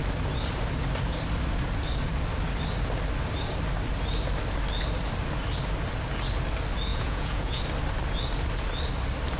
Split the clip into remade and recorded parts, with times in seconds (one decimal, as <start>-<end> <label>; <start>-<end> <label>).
0.0-6.9 recorded; 6.9-7.6 remade; 7.6-9.4 recorded